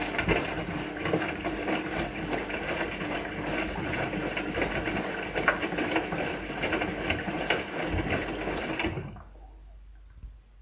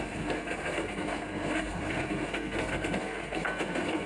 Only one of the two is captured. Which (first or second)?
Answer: first